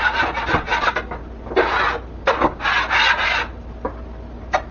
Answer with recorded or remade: recorded